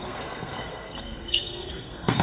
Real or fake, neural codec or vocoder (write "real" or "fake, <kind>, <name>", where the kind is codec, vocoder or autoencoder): fake, codec, SNAC